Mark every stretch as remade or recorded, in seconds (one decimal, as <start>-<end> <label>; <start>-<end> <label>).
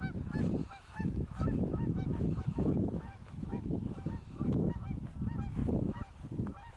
0.0-0.6 recorded; 0.6-4.7 remade; 4.7-5.6 recorded; 5.6-6.2 remade; 6.2-6.8 recorded